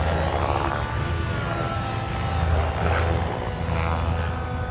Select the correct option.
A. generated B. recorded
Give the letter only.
B